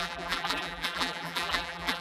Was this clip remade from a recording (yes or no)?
yes